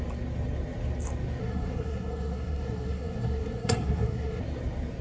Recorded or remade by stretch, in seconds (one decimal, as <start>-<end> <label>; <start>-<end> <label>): 0.0-1.4 recorded; 1.4-4.4 remade; 4.4-5.0 recorded